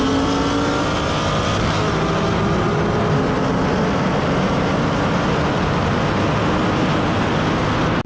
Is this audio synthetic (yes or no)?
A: no